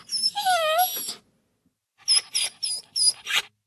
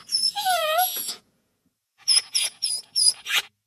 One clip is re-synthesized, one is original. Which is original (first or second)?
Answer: first